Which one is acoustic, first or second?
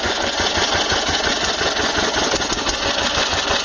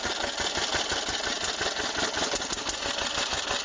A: second